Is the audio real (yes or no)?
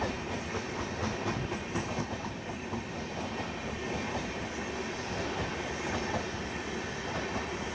yes